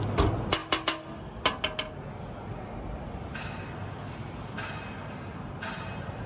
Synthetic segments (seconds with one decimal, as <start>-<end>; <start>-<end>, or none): none